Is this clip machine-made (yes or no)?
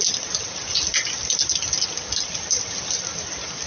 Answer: no